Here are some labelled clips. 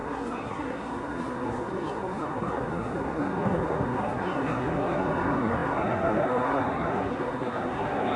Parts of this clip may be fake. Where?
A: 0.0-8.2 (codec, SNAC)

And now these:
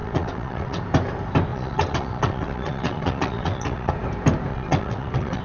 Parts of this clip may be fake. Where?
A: 0.0-0.8 (vocoder, WaveNeXt); 1.5-3.9; 4.5-5.4